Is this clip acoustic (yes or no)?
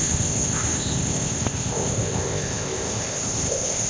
no